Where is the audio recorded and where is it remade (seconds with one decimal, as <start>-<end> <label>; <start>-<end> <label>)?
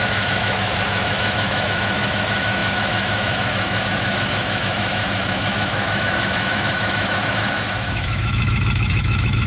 0.0-9.5 remade